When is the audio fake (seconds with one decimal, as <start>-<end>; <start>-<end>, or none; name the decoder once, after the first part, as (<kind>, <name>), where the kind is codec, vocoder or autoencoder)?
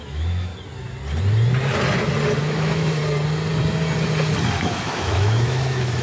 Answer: 0.0-0.5 (autoencoder, DAC-VAE); 2.4-3.0; 4.6-6.0